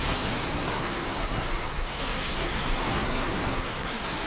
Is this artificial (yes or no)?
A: yes